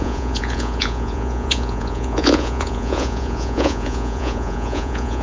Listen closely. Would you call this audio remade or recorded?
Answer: remade